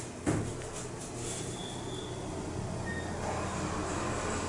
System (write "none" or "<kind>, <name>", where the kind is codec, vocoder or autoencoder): none